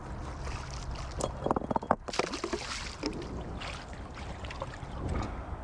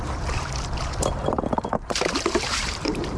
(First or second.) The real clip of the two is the first